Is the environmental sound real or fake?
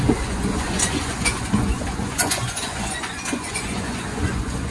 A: fake